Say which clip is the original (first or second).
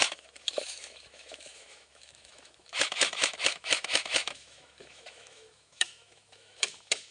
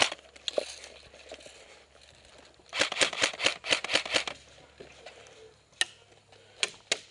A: second